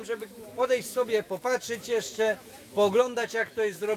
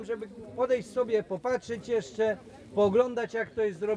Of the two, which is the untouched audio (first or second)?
second